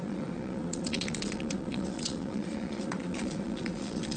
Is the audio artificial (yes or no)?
yes